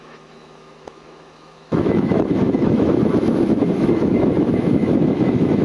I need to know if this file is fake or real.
fake